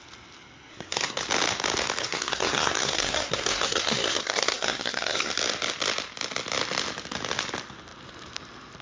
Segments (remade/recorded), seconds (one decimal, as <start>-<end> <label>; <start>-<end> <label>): 0.0-0.7 recorded; 0.7-1.2 remade; 1.2-2.0 recorded; 2.0-5.3 remade; 5.3-8.8 recorded